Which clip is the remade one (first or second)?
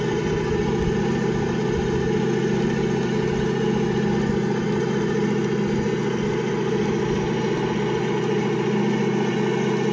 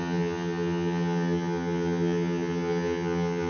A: second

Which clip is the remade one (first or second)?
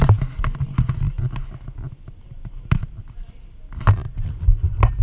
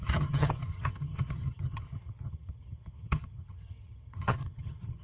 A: second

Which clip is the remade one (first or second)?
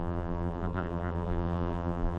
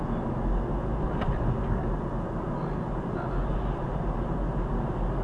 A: first